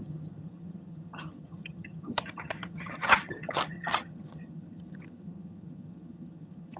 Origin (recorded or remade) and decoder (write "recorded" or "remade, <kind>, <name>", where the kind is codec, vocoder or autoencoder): remade, vocoder, HiFi-GAN